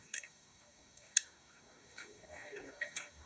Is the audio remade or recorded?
remade